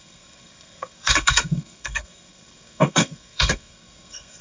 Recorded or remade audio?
remade